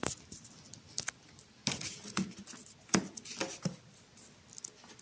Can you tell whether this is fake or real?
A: real